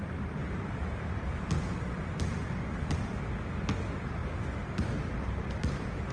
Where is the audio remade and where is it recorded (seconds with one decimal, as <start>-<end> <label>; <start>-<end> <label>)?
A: 0.0-0.4 recorded; 0.4-3.3 remade; 3.3-6.1 recorded